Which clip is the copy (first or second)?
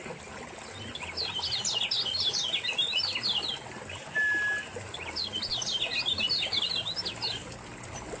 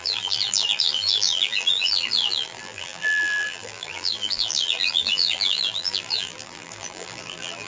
second